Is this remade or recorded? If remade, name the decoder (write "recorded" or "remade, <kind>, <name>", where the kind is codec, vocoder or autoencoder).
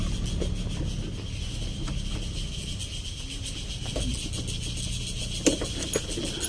recorded